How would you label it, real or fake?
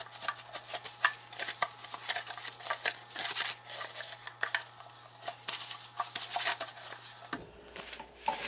real